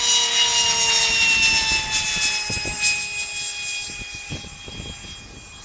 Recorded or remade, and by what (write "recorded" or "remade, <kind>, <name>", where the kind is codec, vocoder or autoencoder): recorded